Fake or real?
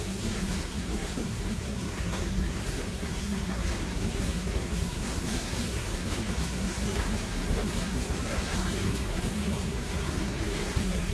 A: fake